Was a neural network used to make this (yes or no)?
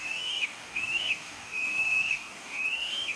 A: yes